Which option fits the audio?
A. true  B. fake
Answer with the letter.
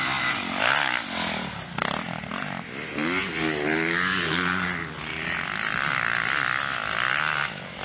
A